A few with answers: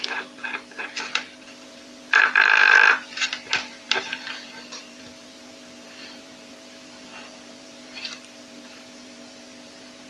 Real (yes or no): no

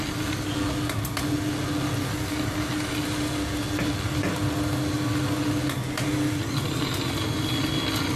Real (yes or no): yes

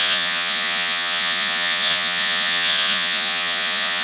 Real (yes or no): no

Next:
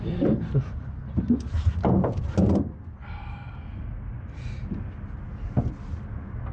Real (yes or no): yes